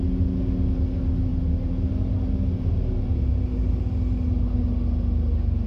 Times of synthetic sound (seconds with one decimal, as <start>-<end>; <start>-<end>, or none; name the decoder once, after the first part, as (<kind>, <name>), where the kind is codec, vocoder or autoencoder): none